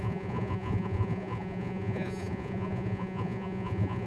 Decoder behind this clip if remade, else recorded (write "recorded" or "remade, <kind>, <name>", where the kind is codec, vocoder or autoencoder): remade, vocoder, Vocos